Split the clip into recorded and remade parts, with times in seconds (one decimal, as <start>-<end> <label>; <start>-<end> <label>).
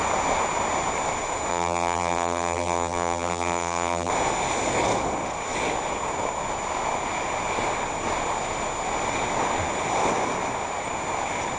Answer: 0.0-1.5 recorded; 1.5-4.1 remade; 4.1-11.6 recorded